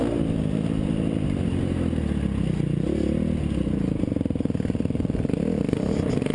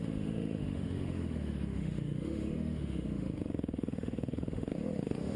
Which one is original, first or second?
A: first